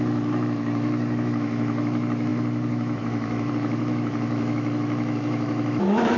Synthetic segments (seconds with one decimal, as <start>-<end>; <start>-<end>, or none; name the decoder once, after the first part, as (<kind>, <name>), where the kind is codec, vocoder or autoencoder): 0.0-6.2 (autoencoder, DAC-VAE)